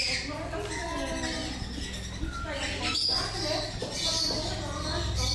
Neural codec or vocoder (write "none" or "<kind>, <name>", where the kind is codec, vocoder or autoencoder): none